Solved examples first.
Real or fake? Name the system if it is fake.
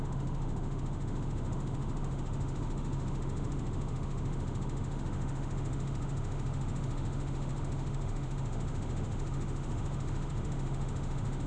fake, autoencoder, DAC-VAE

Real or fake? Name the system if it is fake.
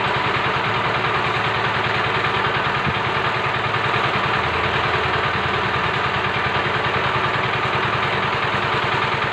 real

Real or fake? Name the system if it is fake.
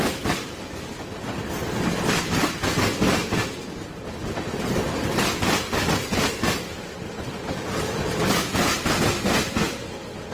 real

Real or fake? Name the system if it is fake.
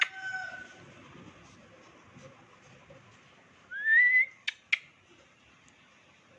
real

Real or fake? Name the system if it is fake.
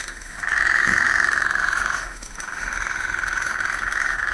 fake, autoencoder, DAC-VAE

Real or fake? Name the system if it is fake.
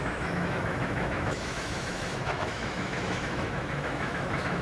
fake, autoencoder, DAC-VAE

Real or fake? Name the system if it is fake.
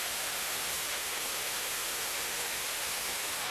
fake, autoencoder, DAC-VAE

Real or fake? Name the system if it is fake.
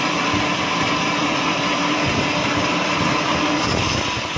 real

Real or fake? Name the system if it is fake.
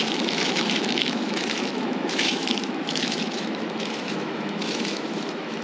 fake, autoencoder, DAC-VAE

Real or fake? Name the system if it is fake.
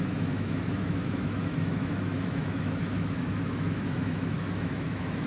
fake, autoencoder, DAC-VAE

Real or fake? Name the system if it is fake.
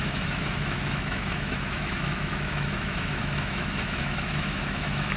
fake, autoencoder, DAC-VAE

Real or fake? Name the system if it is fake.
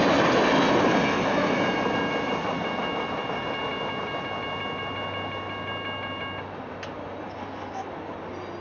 real